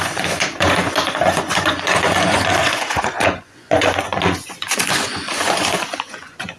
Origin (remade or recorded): remade